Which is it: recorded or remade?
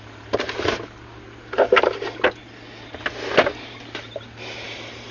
recorded